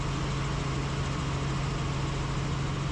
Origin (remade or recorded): recorded